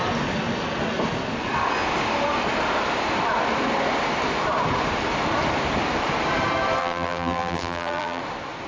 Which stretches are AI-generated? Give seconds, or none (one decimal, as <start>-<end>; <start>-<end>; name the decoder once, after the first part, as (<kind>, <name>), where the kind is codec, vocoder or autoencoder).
6.8-8.2 (vocoder, BigVGAN v2)